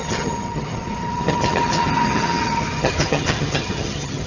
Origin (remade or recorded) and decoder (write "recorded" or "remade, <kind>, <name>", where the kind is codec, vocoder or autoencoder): remade, vocoder, HiFi-GAN